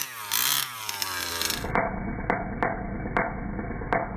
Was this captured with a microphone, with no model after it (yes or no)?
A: yes